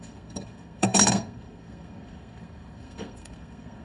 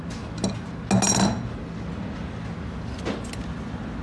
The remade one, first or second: first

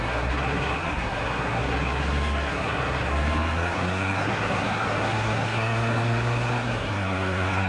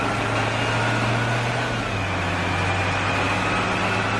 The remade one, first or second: first